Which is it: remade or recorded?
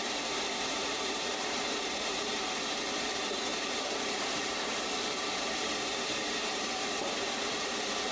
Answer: remade